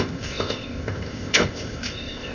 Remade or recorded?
remade